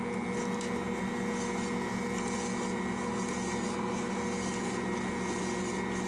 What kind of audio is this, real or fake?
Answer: real